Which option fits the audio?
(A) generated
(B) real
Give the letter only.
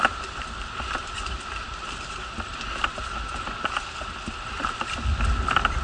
A